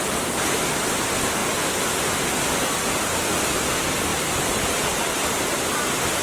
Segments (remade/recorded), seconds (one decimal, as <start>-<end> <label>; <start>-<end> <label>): 0.0-6.2 recorded